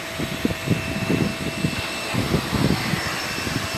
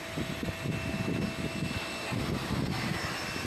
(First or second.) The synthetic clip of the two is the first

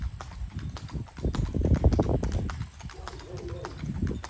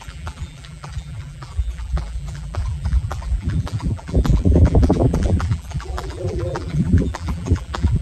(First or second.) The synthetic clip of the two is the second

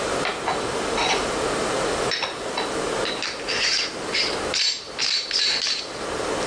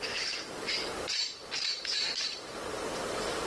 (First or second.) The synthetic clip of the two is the second